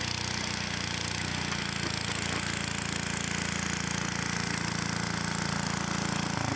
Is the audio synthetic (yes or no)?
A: no